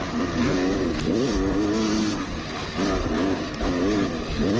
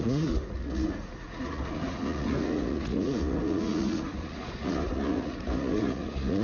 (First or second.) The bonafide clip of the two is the first